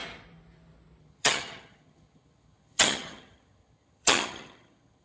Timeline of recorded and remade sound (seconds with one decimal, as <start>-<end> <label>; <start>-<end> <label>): 0.0-1.0 recorded; 1.0-5.0 remade